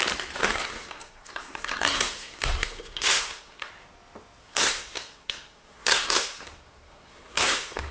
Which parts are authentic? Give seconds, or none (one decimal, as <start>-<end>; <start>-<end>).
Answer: 0.0-0.4; 3.7-4.4